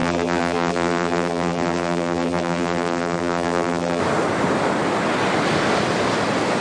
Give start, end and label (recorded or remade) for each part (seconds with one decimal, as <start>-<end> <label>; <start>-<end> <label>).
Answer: 0.0-4.0 remade; 4.0-6.6 recorded